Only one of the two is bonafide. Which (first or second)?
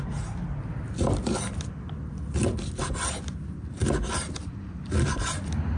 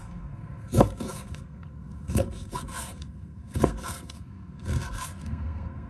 first